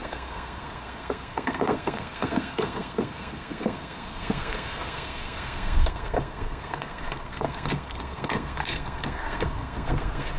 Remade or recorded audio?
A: remade